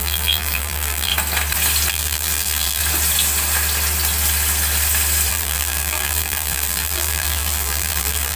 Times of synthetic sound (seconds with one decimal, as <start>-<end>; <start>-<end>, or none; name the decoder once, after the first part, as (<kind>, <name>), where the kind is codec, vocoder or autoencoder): 0.0-1.1 (vocoder, BigVGAN v2); 1.9-2.8; 5.3-8.4